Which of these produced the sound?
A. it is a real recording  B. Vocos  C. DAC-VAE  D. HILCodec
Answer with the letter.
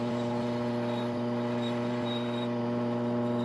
A